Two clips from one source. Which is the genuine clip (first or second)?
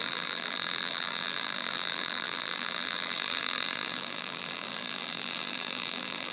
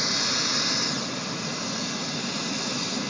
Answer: second